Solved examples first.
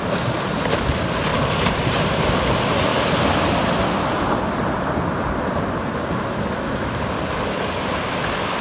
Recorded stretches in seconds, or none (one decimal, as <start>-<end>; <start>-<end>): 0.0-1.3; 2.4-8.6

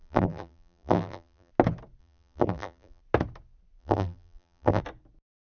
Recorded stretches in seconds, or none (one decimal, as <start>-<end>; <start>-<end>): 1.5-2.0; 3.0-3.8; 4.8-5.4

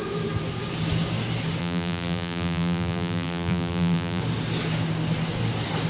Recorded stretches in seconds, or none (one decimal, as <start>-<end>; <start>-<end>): 0.0-1.6; 4.2-5.9

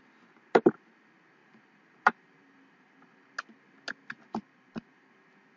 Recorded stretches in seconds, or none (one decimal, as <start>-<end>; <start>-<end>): 0.0-1.4; 3.3-4.4; 5.1-5.6